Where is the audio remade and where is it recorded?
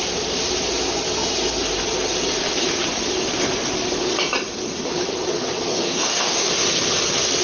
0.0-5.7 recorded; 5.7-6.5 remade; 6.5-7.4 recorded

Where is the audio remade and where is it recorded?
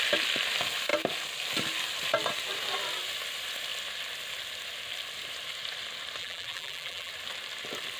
0.0-6.2 recorded; 6.2-7.1 remade; 7.1-8.0 recorded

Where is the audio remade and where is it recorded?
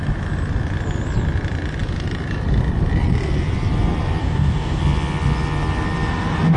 0.0-4.2 recorded; 4.2-4.8 remade; 4.8-6.6 recorded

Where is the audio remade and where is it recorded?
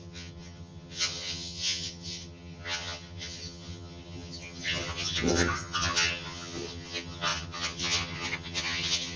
0.0-9.2 remade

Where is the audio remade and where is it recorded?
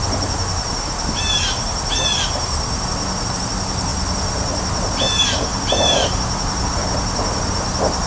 0.0-8.1 recorded